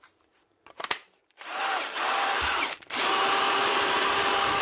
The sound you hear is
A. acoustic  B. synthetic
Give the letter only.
B